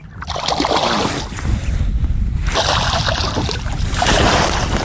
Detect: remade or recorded recorded